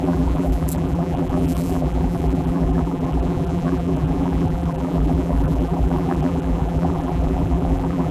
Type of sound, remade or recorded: remade